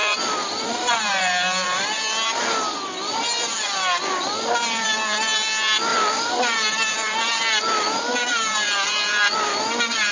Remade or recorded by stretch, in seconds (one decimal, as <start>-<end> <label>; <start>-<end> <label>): 0.0-5.9 recorded; 5.9-6.4 remade; 6.4-10.1 recorded